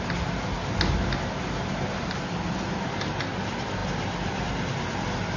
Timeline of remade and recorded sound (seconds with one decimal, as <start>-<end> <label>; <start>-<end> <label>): 0.0-5.4 recorded